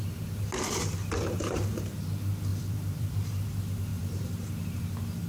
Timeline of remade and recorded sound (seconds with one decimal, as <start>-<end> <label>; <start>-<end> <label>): 0.0-2.5 recorded; 2.5-3.5 remade; 3.5-5.3 recorded